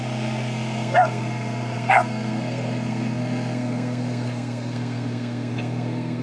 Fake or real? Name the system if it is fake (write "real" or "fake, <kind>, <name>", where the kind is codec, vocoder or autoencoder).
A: fake, codec, SNAC